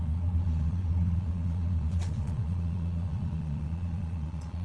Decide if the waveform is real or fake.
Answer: fake